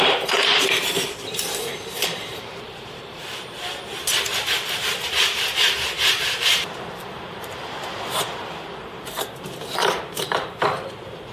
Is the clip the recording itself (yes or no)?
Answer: no